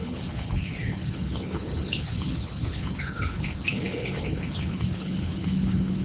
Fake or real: fake